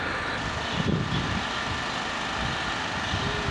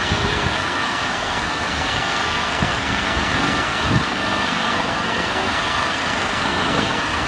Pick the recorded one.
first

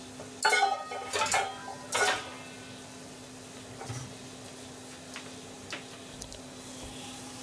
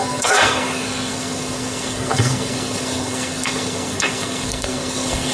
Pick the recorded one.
first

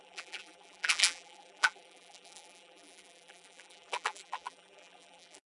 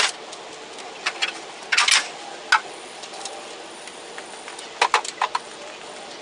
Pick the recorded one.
second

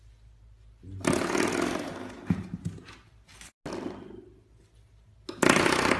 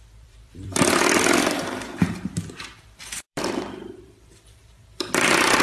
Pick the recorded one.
first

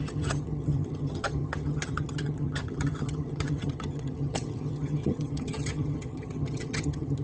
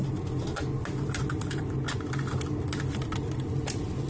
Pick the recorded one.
second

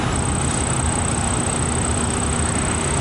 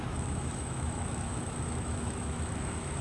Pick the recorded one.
first